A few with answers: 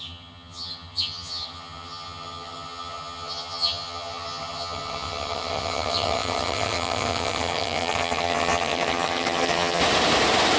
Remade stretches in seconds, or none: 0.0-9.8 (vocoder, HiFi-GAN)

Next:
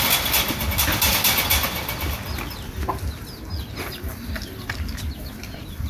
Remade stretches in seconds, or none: 4.1-5.3 (vocoder, BigVGAN v2)

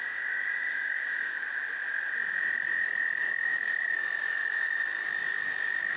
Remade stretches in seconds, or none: 0.0-1.4 (codec, DAC); 3.2-6.0